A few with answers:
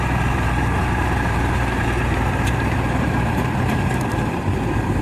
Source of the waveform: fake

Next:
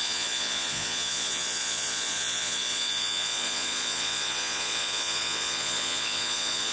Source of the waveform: fake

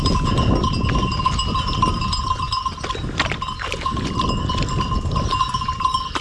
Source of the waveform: real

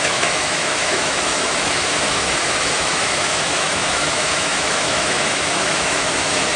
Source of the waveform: fake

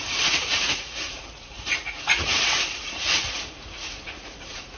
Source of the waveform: fake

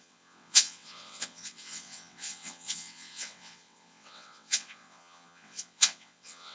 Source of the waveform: fake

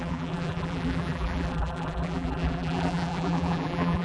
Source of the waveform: fake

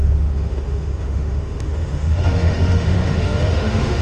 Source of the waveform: fake